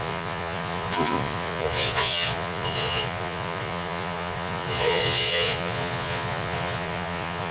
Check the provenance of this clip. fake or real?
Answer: fake